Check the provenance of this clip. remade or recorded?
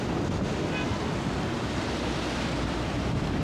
remade